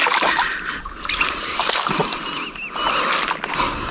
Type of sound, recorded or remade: recorded